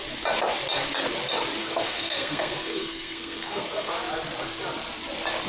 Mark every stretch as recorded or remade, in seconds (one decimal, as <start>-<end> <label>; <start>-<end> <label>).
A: 0.0-1.6 recorded; 1.6-3.9 remade; 3.9-5.5 recorded